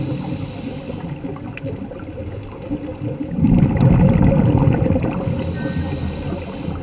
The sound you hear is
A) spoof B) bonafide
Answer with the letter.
B